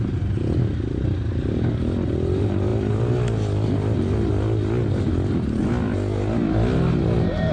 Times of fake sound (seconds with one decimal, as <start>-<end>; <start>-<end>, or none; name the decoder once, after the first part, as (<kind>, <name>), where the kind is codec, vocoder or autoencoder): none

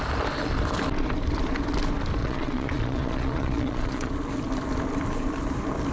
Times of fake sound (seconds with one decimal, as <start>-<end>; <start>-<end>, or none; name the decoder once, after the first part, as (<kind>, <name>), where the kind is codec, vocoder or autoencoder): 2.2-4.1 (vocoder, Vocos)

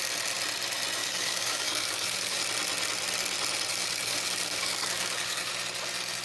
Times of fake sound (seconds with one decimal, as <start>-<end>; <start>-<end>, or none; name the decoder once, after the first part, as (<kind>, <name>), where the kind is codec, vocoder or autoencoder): 1.0-2.4 (codec, DAC); 3.7-5.5

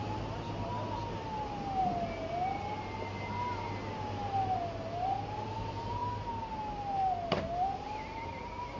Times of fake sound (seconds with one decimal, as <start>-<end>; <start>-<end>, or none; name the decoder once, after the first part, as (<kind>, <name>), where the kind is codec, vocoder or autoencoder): none

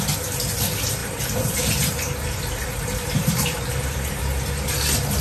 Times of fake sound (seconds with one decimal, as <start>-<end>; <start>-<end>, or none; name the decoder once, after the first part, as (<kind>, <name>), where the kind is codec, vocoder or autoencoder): 1.0-4.1 (vocoder, BigVGAN v2)

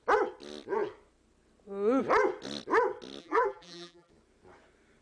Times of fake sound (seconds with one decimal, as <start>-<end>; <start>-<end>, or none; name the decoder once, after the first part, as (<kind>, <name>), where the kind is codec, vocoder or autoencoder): 3.2-4.1 (vocoder, BigVGAN v2)

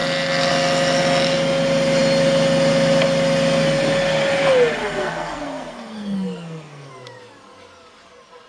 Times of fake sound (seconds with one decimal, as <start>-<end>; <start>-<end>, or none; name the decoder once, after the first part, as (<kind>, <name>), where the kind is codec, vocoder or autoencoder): 4.8-6.9 (codec, SNAC)

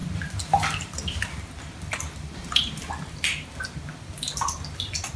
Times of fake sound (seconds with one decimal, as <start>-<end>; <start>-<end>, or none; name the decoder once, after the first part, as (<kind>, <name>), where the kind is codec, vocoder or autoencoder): none